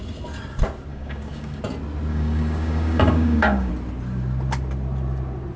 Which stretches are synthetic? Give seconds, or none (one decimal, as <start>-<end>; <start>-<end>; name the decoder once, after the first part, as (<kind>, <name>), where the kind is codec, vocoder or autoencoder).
0.9-1.6 (codec, DAC); 2.1-3.7